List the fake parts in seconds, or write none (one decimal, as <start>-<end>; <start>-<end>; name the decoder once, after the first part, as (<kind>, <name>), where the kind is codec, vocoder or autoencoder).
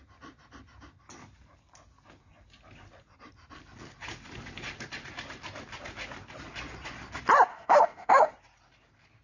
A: 7.5-8.3 (autoencoder, DAC-VAE)